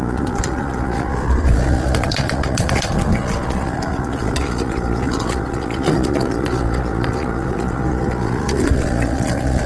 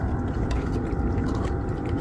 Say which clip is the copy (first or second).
first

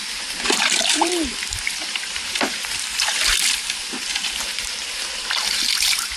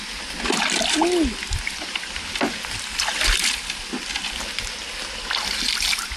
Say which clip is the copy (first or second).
first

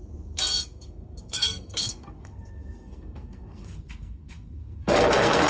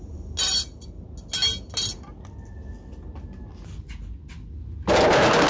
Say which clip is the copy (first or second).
first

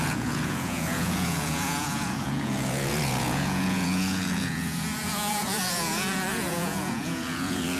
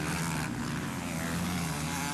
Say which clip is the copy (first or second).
first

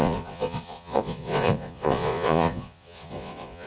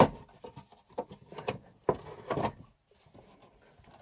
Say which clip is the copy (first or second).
first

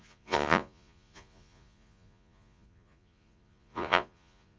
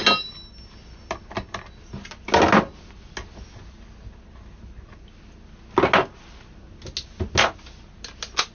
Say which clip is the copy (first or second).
first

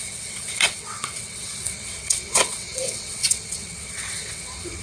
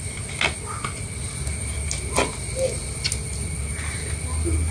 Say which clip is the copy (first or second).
first